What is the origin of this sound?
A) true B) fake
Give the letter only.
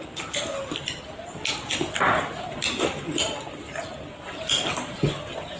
A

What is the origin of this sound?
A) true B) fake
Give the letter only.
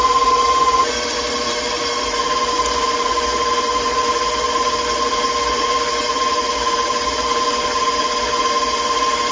B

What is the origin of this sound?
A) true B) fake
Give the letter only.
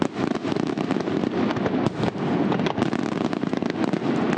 A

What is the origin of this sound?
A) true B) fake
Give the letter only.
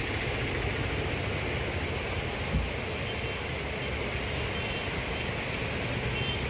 A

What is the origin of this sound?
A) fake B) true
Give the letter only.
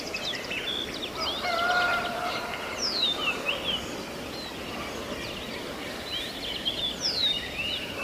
B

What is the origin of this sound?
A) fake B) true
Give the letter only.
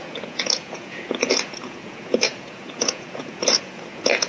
A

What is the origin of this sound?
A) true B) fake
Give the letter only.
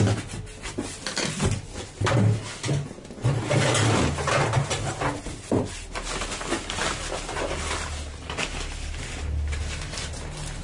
A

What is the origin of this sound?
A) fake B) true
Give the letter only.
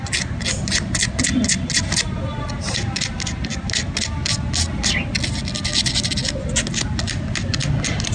B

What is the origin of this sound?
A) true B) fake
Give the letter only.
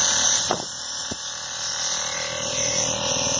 B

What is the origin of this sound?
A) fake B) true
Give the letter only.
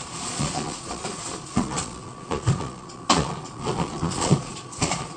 A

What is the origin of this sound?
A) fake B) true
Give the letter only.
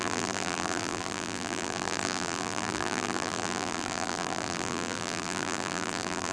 A